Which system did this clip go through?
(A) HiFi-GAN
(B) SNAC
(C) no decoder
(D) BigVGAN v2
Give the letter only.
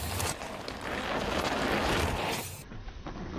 C